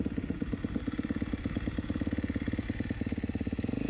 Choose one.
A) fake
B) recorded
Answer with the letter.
B